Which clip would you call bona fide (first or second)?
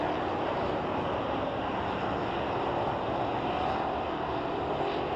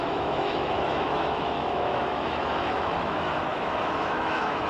first